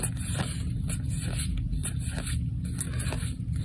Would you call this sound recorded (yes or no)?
yes